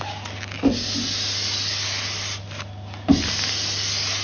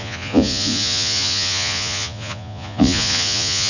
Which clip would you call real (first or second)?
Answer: first